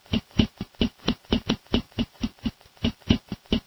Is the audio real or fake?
fake